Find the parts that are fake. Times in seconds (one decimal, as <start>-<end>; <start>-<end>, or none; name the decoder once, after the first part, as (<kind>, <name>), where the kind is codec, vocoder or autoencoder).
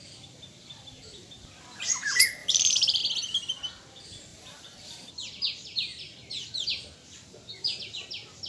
2.4-3.0 (vocoder, BigVGAN v2); 4.3-5.1